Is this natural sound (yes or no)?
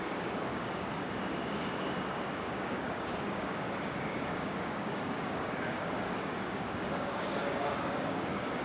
no